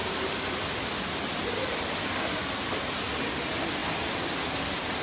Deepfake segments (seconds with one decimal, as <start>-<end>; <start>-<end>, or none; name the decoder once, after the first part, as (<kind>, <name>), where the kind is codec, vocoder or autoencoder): none